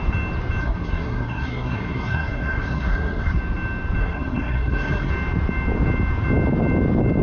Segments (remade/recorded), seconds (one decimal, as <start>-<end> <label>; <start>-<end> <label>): 0.0-0.6 recorded; 0.6-3.4 remade; 3.4-4.0 recorded; 4.0-5.1 remade; 5.1-7.2 recorded